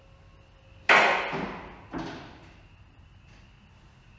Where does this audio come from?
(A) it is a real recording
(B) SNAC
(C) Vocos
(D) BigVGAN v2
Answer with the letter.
A